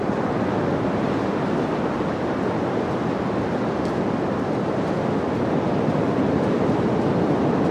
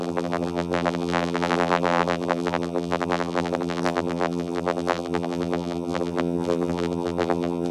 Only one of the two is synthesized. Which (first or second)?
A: second